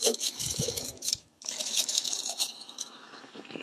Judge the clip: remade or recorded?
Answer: remade